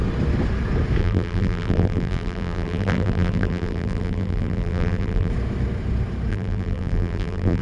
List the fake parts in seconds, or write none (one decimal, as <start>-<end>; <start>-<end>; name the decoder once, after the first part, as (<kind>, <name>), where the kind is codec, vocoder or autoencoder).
1.0-5.3 (vocoder, BigVGAN v2); 6.3-7.6